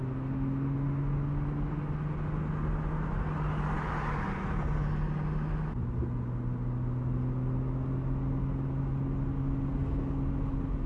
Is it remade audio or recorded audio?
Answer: recorded